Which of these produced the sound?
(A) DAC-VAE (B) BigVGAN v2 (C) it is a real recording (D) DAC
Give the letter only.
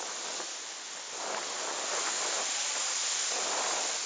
C